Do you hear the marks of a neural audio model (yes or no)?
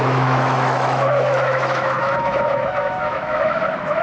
yes